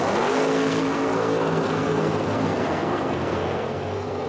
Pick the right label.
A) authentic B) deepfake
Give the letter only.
B